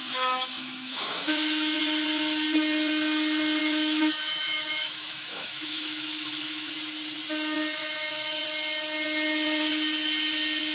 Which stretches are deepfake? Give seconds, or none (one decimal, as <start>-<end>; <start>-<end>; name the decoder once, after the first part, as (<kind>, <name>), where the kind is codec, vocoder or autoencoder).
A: 0.0-1.8 (autoencoder, DAC-VAE); 3.6-6.7; 7.8-8.4